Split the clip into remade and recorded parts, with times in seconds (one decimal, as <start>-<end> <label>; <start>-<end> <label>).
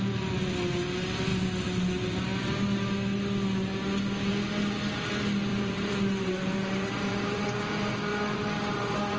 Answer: 0.0-5.5 recorded; 5.5-7.4 remade; 7.4-8.1 recorded; 8.1-9.2 remade